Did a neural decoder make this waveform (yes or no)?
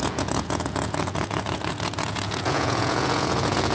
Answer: yes